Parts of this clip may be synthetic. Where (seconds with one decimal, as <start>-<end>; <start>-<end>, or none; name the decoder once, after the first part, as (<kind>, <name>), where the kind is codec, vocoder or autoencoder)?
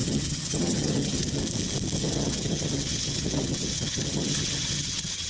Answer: 0.0-1.4 (vocoder, HiFi-GAN); 2.0-5.3